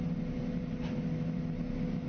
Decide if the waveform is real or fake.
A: real